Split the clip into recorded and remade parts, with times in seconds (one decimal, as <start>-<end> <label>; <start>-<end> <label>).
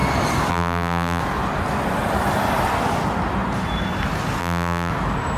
0.0-0.5 recorded; 0.5-1.2 remade; 1.2-4.4 recorded; 4.4-4.9 remade; 4.9-5.4 recorded